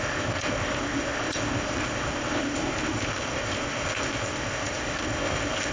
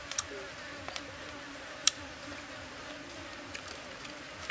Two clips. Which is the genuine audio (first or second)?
second